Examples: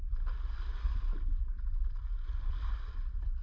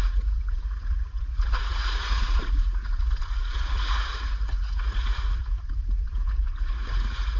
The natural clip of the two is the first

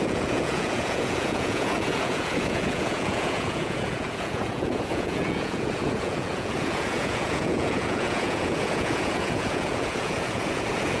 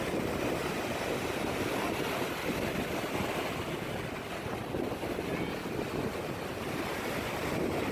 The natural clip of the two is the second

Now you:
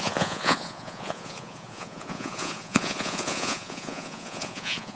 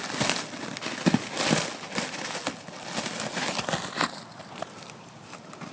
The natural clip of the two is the second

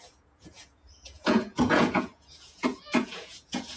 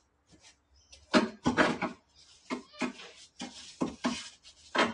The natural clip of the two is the second